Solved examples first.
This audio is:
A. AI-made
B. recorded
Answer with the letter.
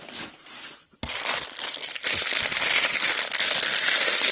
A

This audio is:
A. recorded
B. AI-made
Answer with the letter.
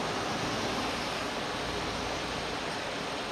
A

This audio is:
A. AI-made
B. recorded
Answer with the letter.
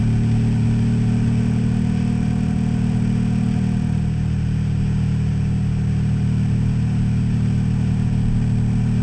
B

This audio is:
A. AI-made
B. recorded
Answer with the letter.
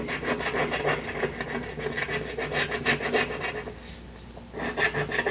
B